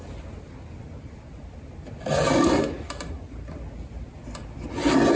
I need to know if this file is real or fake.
real